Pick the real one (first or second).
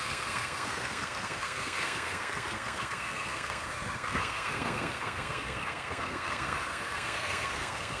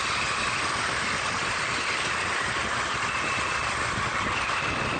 second